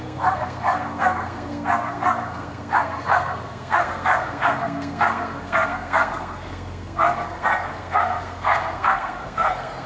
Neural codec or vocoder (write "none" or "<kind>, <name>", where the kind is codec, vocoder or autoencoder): codec, SNAC